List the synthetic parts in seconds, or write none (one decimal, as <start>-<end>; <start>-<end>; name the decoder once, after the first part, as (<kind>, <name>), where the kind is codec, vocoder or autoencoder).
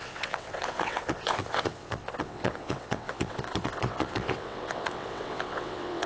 0.0-6.1 (vocoder, WaveNeXt)